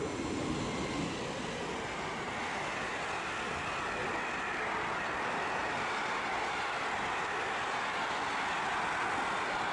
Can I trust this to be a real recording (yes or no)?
yes